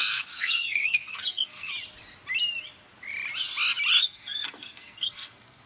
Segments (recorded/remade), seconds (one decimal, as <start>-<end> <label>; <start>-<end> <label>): 0.0-1.7 remade; 1.7-4.0 recorded; 4.0-5.7 remade